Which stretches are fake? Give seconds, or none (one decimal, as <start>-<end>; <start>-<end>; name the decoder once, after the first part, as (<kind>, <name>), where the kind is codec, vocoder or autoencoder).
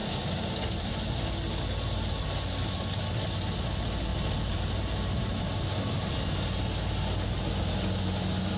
4.1-5.5 (vocoder, BigVGAN v2)